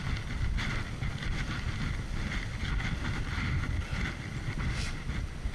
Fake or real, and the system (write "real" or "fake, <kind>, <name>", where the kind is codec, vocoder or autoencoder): real